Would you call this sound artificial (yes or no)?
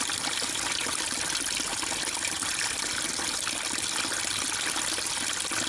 no